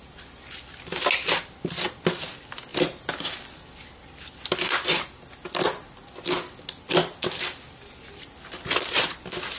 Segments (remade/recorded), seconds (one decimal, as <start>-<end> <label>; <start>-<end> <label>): 0.0-9.6 recorded